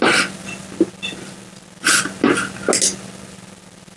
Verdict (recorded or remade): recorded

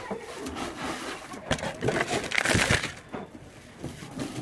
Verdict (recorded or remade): recorded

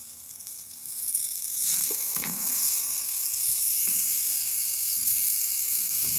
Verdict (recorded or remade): remade